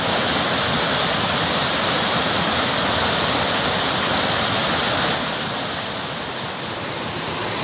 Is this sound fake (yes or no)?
no